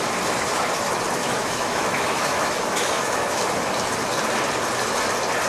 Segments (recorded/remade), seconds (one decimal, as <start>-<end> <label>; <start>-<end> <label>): 0.0-1.2 recorded; 1.2-3.4 remade; 3.4-5.5 recorded